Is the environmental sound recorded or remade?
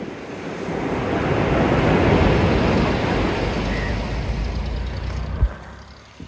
recorded